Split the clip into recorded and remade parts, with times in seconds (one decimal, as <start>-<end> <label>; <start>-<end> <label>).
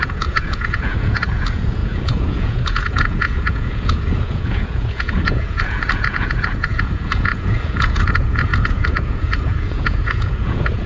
0.0-10.9 remade